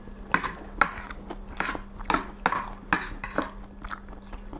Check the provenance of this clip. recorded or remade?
recorded